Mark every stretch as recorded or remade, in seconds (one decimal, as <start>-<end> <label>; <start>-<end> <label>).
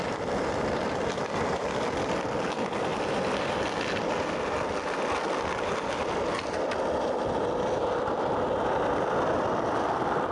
0.0-10.3 recorded